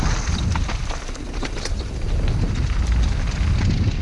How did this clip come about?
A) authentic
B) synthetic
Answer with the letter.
A